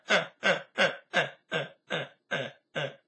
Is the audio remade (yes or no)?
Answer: no